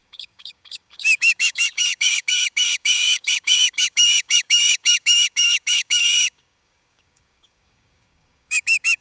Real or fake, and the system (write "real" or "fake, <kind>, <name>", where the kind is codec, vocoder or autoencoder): fake, codec, DAC